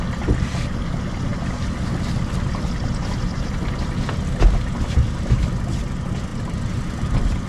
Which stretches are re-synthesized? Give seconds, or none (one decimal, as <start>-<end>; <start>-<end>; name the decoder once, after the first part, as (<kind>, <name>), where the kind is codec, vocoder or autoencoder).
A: none